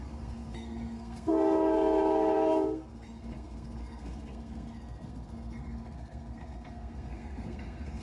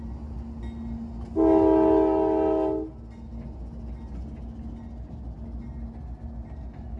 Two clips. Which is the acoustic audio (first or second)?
second